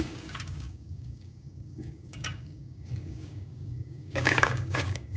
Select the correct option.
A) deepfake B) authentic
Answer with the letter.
A